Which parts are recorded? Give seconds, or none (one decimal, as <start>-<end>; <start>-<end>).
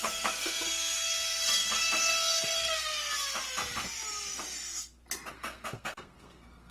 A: 2.9-5.3